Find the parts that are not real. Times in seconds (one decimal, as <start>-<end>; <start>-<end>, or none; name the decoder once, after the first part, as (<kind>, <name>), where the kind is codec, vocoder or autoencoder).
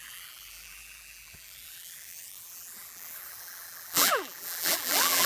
0.0-5.3 (vocoder, BigVGAN v2)